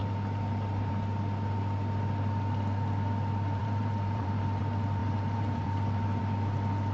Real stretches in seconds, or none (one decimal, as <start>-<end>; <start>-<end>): 0.9-3.6; 4.6-5.0; 6.2-6.9